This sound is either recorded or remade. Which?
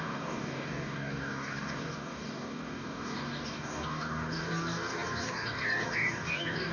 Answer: remade